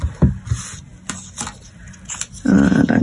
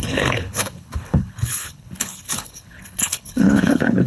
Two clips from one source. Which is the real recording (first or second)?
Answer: first